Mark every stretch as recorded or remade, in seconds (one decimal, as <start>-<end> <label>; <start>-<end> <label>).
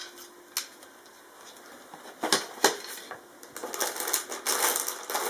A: 0.0-5.3 recorded